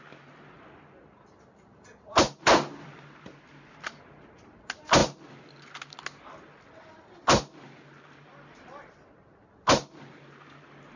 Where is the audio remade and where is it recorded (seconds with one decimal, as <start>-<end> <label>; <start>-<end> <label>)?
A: 0.0-11.0 recorded